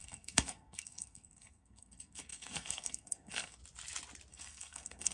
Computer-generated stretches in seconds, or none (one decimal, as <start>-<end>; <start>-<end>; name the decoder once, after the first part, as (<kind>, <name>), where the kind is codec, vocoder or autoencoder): 0.0-3.6 (codec, SNAC); 4.3-5.1